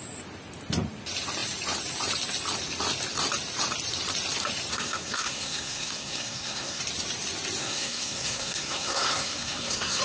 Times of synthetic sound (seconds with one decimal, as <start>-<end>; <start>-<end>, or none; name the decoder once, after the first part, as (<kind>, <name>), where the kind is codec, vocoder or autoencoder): 4.7-6.8 (codec, SNAC); 7.6-10.0